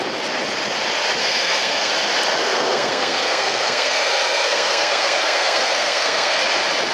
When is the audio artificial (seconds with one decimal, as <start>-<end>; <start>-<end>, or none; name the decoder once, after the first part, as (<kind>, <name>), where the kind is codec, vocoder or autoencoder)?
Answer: 1.2-1.9 (codec, SNAC); 2.4-6.4